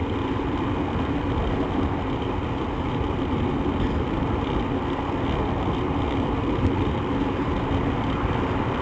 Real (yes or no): yes